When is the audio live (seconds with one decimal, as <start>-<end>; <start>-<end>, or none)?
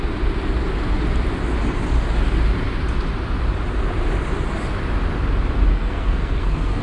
0.0-5.7